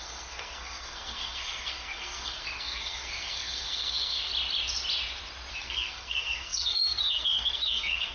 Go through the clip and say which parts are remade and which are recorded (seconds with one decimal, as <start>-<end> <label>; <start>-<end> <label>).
0.0-4.3 remade; 4.3-5.5 recorded; 5.5-8.1 remade